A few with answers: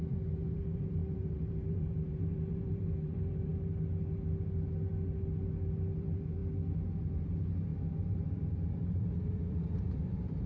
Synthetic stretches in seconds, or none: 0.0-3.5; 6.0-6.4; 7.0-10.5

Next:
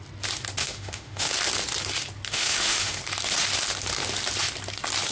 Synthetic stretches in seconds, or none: 0.6-1.3; 2.3-3.0

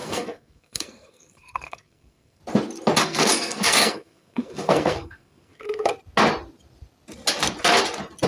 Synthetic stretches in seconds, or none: 0.0-2.4; 3.0-5.9

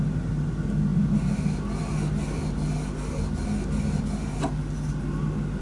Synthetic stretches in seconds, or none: none

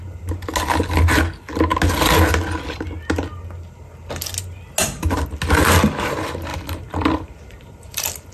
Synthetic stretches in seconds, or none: 6.5-8.3

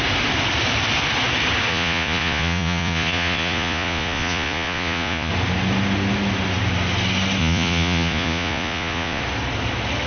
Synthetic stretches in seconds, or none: 1.7-5.3; 7.4-9.2